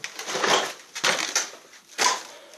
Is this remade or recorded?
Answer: recorded